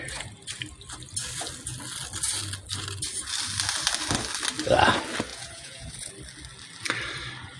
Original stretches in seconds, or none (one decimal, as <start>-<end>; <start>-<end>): 0.0-5.3; 6.1-7.6